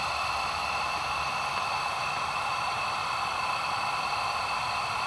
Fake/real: real